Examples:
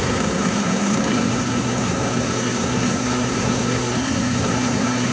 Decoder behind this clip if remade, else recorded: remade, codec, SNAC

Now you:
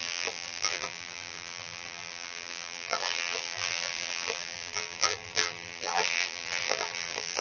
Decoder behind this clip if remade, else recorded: remade, vocoder, BigVGAN v2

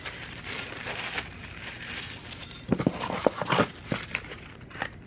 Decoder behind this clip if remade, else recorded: remade, vocoder, BigVGAN v2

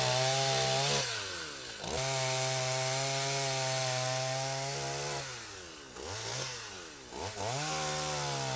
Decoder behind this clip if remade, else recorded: recorded